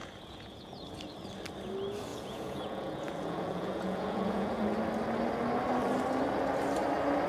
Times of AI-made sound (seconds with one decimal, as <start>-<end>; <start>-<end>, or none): 0.0-0.8; 2.1-4.6